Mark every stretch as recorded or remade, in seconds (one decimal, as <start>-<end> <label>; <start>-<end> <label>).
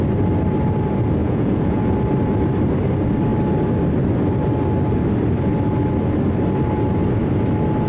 0.0-1.2 recorded; 1.2-1.9 remade; 1.9-7.9 recorded